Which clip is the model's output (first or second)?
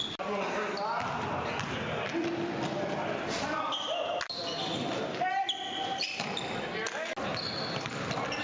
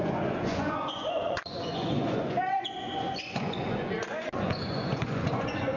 second